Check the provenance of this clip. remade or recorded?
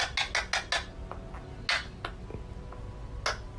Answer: recorded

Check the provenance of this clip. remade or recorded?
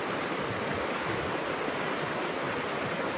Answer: recorded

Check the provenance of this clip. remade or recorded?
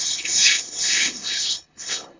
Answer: remade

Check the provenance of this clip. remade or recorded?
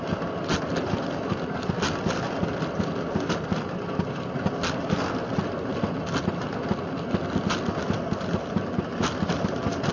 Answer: recorded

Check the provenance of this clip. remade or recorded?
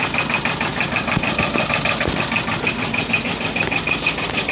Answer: remade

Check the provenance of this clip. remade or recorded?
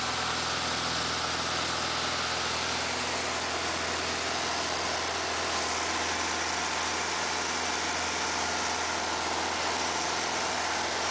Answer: recorded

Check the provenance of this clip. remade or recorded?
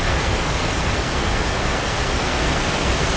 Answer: remade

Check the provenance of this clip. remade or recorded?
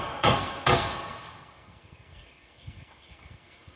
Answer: remade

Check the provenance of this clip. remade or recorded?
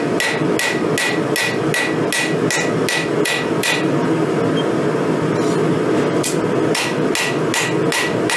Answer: recorded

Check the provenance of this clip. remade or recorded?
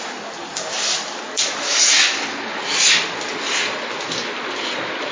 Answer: recorded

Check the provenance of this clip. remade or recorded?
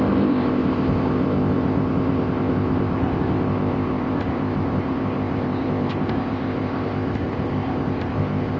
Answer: remade